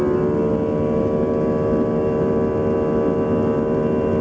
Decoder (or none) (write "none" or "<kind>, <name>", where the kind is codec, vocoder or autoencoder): none